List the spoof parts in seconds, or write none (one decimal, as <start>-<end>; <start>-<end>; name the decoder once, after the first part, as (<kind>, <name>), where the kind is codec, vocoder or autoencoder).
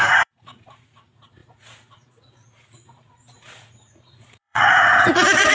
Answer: 0.0-5.5 (vocoder, Vocos)